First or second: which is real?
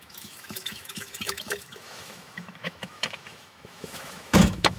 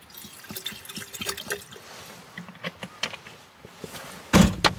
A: second